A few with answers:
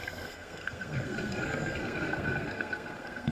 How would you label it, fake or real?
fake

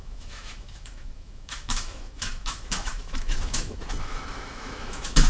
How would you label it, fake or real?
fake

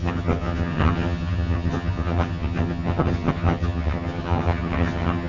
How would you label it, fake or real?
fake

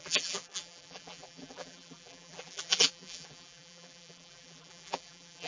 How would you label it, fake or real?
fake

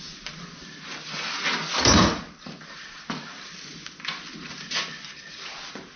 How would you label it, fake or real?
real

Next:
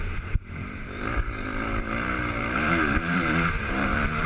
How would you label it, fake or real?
fake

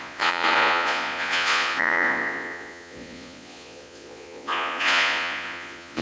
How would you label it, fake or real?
fake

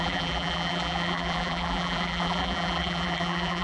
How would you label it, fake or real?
fake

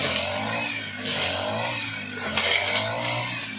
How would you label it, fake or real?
real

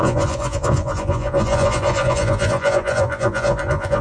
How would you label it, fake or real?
fake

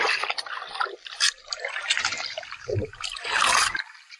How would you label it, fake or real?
real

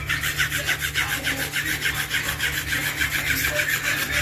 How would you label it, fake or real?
real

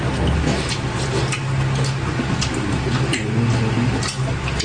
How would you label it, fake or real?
real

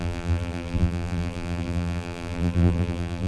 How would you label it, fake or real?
fake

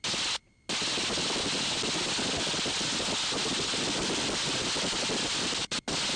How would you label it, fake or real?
real